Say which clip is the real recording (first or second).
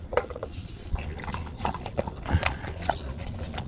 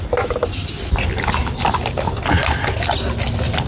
second